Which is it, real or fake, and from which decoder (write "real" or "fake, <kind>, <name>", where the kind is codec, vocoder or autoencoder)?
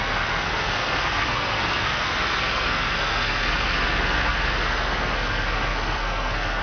fake, codec, SNAC